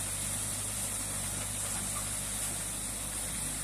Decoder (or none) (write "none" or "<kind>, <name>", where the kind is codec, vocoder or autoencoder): none